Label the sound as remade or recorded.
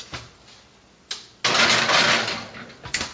recorded